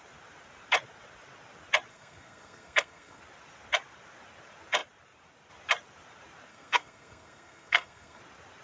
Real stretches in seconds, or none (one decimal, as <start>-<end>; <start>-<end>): 0.0-1.9; 3.2-6.5; 8.2-8.6